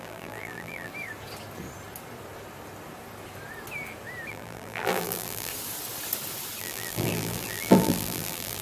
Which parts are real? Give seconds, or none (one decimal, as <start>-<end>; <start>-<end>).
0.9-4.3; 5.5-6.6